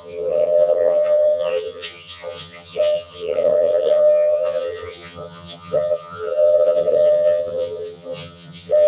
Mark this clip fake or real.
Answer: fake